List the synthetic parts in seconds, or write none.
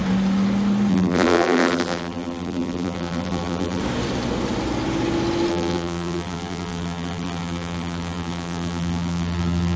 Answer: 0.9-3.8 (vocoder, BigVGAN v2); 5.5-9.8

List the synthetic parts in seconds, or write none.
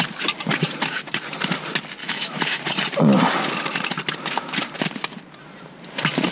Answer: 2.0-2.6 (autoencoder, DAC-VAE)